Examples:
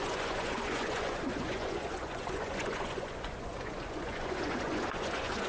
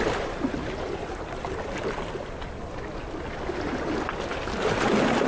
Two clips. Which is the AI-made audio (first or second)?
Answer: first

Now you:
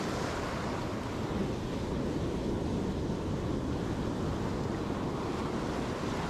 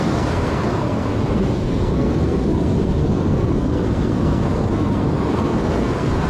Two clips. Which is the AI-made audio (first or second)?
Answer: second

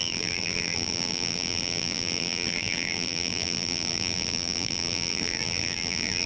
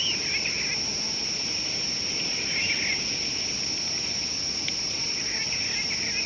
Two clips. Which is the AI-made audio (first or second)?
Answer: first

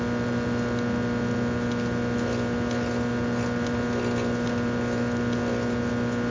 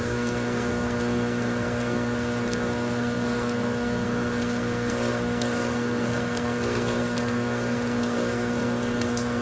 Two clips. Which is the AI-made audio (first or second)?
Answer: second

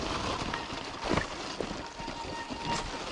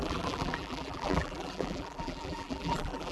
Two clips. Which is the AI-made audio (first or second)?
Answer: second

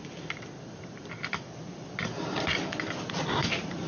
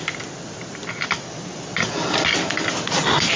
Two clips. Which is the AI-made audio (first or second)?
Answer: first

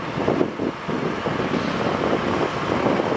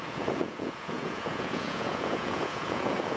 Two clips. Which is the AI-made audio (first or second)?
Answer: second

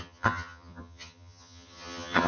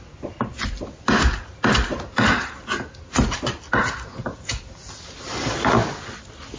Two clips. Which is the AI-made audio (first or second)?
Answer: first